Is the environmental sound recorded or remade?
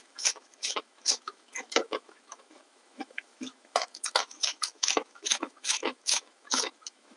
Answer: remade